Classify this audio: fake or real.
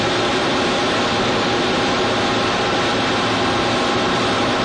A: real